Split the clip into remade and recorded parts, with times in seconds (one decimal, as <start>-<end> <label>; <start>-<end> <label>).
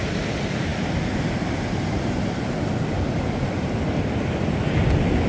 0.0-5.3 recorded